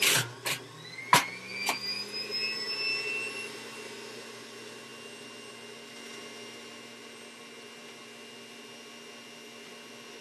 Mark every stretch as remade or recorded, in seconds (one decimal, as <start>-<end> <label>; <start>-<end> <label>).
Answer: 0.0-10.2 recorded